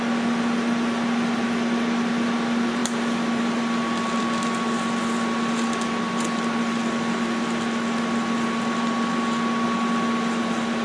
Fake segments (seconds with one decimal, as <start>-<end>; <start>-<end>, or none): none